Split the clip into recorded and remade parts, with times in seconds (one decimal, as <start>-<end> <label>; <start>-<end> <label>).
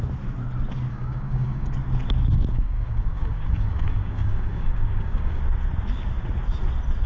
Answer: 0.0-0.9 recorded; 0.9-1.7 remade; 1.7-2.5 recorded; 2.5-5.4 remade; 5.4-7.1 recorded